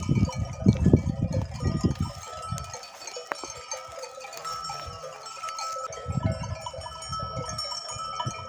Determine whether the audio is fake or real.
real